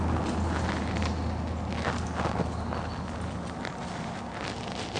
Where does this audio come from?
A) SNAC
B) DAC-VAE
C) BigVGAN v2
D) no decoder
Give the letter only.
D